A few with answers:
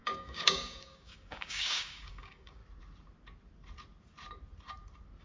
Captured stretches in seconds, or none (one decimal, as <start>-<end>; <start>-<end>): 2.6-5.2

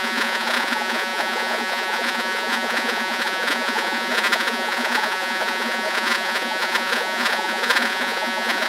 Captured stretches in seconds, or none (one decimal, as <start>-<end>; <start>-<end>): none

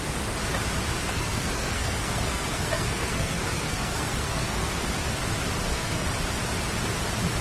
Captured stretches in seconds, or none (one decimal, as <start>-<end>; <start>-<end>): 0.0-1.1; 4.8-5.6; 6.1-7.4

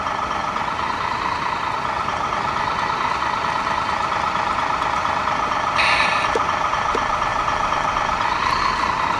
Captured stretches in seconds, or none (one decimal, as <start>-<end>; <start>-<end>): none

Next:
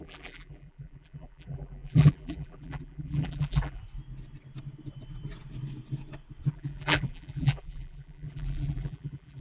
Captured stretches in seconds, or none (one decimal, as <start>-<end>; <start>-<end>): 3.8-6.5

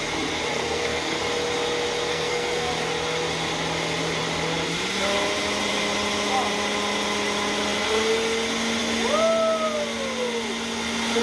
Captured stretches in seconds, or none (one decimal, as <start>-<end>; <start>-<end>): 0.0-0.5; 1.2-2.1; 2.7-11.2

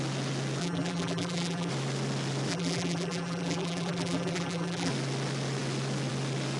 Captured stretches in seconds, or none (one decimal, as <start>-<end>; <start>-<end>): 0.0-0.6; 1.7-2.5; 4.9-6.6

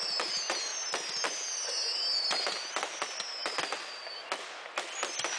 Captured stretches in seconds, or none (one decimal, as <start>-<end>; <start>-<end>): 0.0-5.4